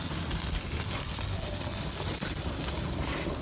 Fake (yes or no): no